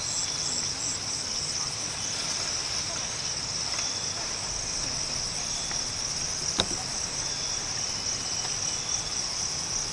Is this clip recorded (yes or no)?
yes